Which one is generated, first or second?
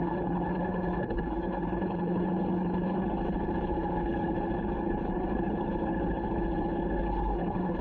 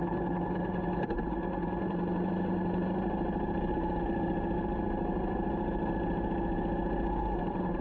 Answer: first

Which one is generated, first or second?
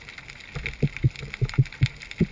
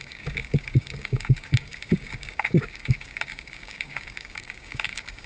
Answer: second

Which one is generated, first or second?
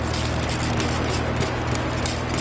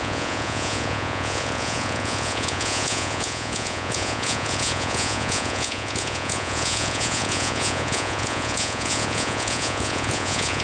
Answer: second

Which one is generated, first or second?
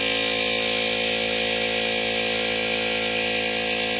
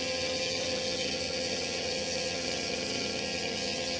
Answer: second